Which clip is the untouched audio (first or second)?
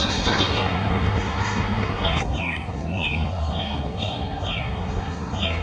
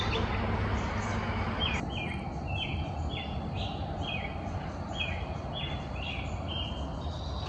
second